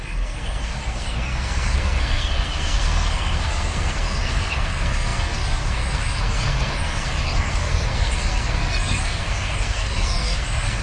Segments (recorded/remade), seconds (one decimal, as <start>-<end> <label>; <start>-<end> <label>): 0.0-10.8 remade